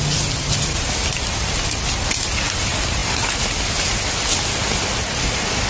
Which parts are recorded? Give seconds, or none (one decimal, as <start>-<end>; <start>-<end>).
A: 0.0-5.7